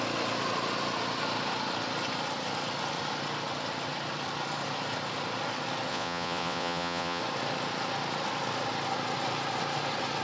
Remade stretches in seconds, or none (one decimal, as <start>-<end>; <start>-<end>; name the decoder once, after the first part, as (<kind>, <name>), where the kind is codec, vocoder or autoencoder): 5.9-7.2 (vocoder, Vocos)